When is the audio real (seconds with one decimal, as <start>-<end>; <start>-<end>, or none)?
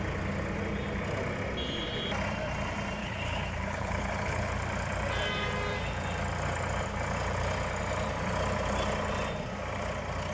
0.0-3.0; 4.5-10.3